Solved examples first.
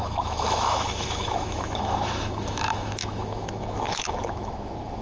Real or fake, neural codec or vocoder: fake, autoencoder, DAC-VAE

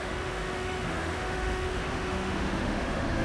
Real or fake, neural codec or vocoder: fake, autoencoder, DAC-VAE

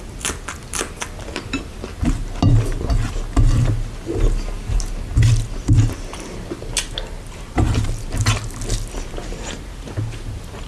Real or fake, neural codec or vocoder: real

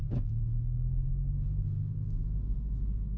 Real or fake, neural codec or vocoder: fake, autoencoder, DAC-VAE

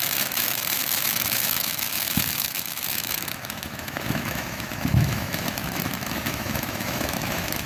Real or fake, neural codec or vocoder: fake, autoencoder, DAC-VAE